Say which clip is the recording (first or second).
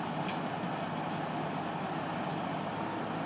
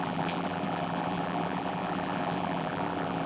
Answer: first